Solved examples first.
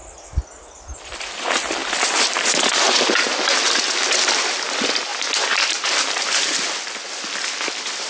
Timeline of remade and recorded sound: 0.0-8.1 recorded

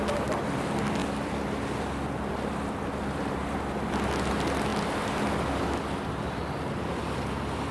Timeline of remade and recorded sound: 0.0-1.0 recorded; 1.0-3.3 remade; 3.3-7.7 recorded

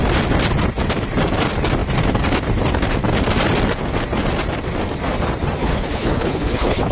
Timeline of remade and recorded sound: 0.0-5.6 recorded; 5.6-6.9 remade

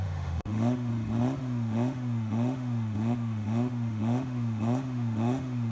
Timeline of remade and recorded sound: 0.0-0.9 remade; 0.9-1.4 recorded; 1.4-5.7 remade

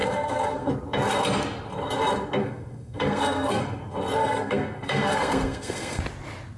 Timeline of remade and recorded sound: 0.0-0.7 remade; 0.7-2.4 recorded; 2.4-3.8 remade; 3.8-4.2 recorded; 4.2-6.0 remade; 6.0-6.6 recorded

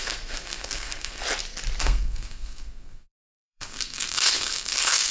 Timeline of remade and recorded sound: 0.0-1.2 remade; 1.2-1.8 recorded; 1.8-5.1 remade